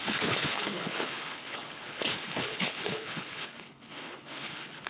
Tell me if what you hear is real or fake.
fake